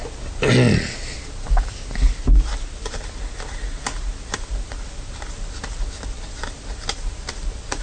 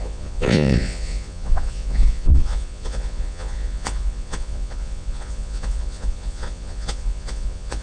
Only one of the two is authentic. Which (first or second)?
first